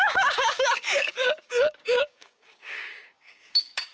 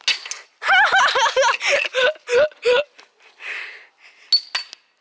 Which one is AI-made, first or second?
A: first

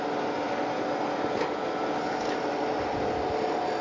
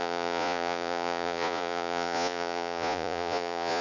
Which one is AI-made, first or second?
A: second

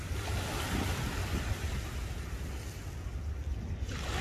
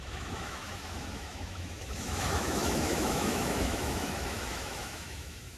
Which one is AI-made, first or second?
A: second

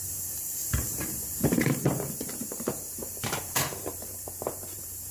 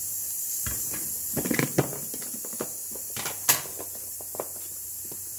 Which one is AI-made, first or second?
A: first